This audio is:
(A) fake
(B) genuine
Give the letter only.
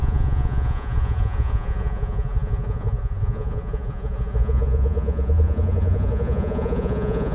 A